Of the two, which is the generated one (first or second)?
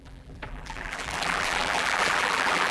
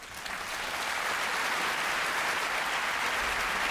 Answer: first